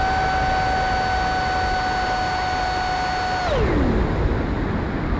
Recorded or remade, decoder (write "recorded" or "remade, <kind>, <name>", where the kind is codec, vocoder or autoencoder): recorded